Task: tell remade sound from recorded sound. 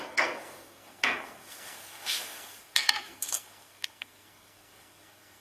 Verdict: remade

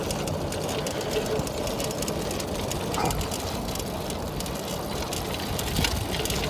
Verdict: recorded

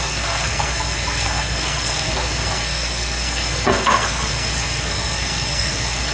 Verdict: remade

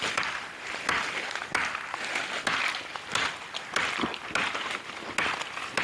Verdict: recorded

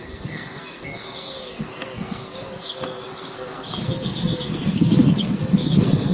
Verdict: remade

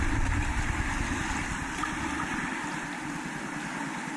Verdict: recorded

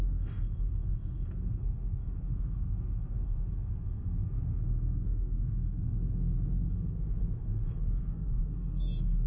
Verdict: remade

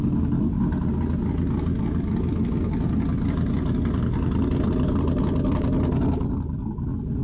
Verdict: recorded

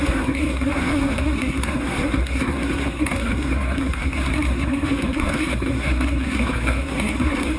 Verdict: remade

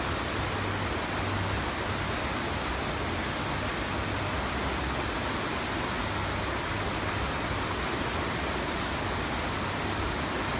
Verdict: recorded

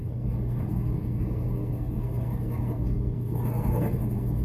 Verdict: remade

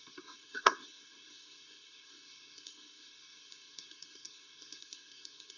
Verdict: remade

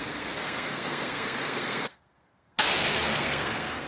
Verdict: remade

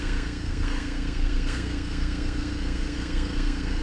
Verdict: remade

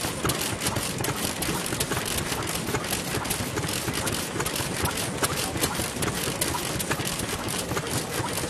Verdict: recorded